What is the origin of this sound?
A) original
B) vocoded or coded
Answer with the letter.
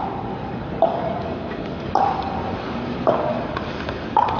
B